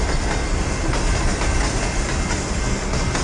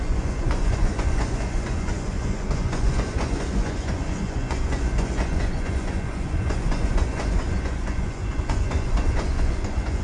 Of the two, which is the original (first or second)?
first